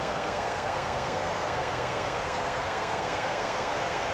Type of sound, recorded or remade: remade